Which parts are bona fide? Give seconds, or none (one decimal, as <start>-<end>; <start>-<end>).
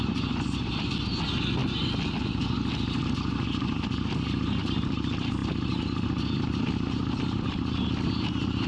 0.0-8.7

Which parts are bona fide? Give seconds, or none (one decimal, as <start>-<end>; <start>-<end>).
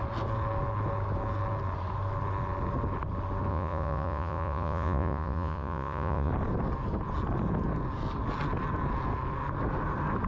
0.0-3.5; 6.3-10.3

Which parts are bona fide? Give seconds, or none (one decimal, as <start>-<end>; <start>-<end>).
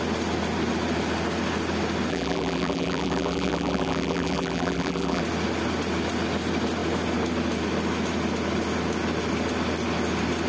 0.0-2.1; 5.2-10.5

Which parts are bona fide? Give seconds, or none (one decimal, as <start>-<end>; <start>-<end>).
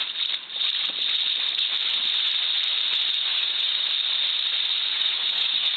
0.0-3.3; 3.9-4.9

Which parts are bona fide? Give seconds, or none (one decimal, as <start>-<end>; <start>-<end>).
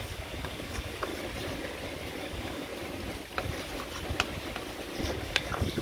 1.1-2.2; 2.7-5.0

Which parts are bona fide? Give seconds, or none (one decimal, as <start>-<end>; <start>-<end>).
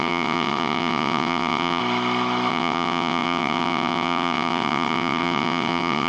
1.8-2.5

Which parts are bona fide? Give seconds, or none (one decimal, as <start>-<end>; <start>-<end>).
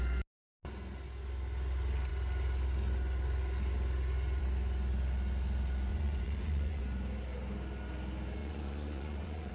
0.0-5.9; 6.8-8.4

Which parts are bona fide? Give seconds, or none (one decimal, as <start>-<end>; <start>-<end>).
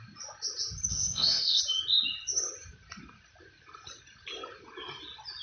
0.0-0.9; 1.6-5.4